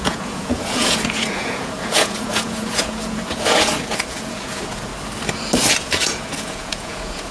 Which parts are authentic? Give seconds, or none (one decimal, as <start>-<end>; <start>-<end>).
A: 4.9-5.7